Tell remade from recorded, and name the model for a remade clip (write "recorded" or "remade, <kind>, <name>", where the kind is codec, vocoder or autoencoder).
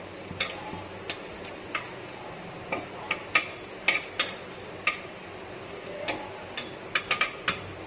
recorded